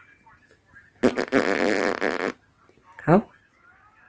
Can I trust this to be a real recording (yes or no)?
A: yes